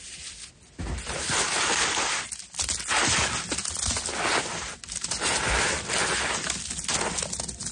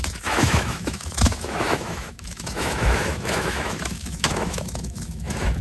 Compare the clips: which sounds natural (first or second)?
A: first